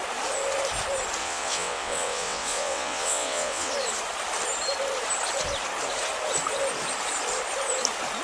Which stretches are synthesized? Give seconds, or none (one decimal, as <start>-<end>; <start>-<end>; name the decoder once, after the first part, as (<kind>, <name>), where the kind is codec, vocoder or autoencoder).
1.2-3.7 (vocoder, WaveNeXt)